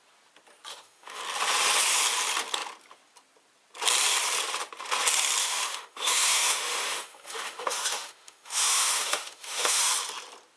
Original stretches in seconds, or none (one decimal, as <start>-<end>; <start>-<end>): 0.0-0.7; 1.2-5.4; 9.8-10.6